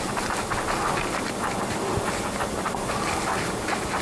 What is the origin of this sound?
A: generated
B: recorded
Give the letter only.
B